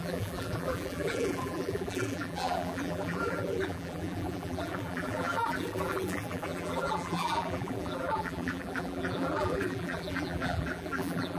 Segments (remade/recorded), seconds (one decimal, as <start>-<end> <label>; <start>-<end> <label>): 0.0-11.4 remade